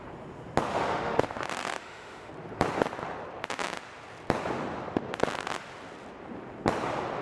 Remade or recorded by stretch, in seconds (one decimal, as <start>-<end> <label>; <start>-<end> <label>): 0.0-0.7 recorded; 0.7-2.3 remade; 2.3-7.2 recorded